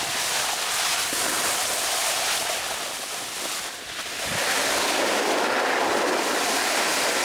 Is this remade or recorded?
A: recorded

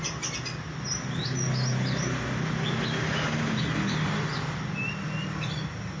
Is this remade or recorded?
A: recorded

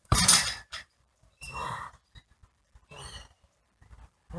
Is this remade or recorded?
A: remade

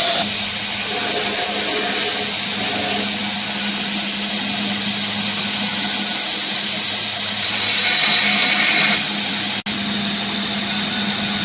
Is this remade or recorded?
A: recorded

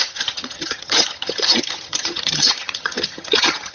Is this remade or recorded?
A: remade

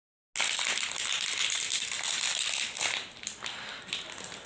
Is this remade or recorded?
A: recorded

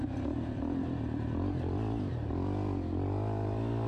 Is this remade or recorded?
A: recorded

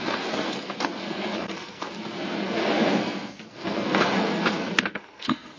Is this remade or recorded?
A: remade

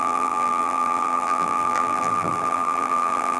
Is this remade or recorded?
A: remade